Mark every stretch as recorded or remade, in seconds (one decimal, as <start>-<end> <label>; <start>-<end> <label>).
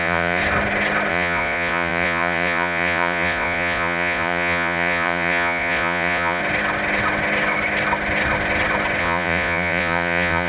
0.0-0.4 remade; 0.4-1.1 recorded; 1.1-6.4 remade; 6.4-9.0 recorded; 9.0-10.5 remade